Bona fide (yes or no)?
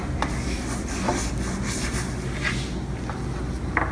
yes